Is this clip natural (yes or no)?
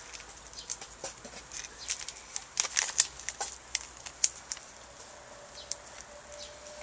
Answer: yes